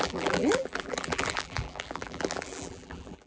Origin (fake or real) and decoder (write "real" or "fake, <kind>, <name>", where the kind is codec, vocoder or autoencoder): fake, vocoder, BigVGAN v2